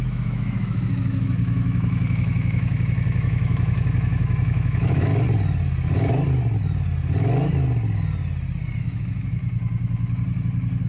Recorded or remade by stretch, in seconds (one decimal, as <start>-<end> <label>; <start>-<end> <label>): 0.0-5.1 remade; 5.1-8.8 recorded; 8.8-9.4 remade; 9.4-10.9 recorded